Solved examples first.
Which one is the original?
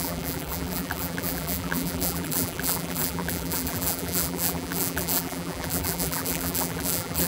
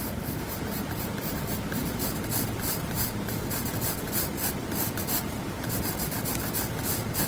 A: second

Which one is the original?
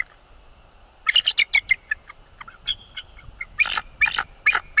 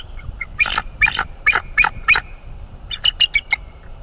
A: first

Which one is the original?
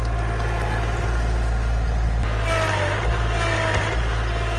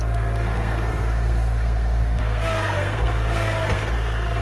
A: first